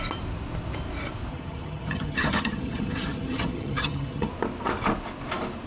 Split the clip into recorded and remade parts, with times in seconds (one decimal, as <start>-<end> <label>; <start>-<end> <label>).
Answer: 0.0-1.3 recorded; 1.3-4.3 remade; 4.3-5.7 recorded

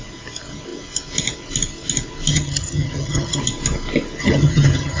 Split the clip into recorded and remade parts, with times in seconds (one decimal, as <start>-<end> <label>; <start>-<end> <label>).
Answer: 0.0-2.3 recorded; 2.3-3.4 remade; 3.4-4.2 recorded; 4.2-5.0 remade

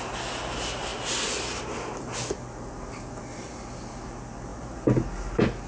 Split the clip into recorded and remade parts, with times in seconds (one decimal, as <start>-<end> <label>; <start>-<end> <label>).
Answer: 0.0-5.7 recorded

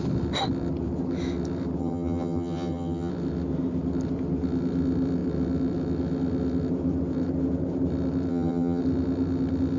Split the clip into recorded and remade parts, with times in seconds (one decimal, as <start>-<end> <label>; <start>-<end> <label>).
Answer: 0.0-1.8 recorded; 1.8-3.1 remade; 3.1-8.3 recorded; 8.3-8.8 remade; 8.8-9.8 recorded

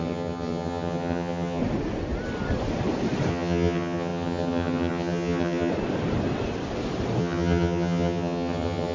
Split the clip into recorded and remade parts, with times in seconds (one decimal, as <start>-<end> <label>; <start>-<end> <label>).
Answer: 0.0-1.6 remade; 1.6-3.3 recorded; 3.3-5.7 remade; 5.7-7.2 recorded; 7.2-8.9 remade